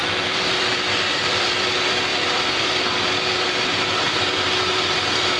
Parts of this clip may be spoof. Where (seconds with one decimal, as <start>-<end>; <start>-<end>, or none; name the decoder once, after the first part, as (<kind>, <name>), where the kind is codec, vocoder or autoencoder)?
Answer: 0.0-5.4 (vocoder, BigVGAN v2)